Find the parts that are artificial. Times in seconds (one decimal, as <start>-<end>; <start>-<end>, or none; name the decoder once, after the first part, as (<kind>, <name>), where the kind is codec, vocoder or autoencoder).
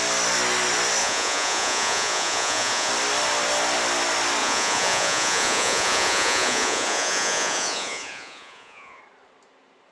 1.0-2.9 (vocoder, Vocos); 4.4-9.0